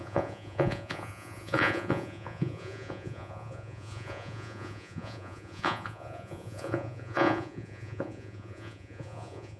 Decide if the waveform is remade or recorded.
remade